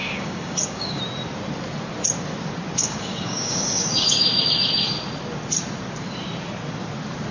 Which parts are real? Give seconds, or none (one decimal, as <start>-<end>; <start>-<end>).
1.0-2.8; 4.4-7.3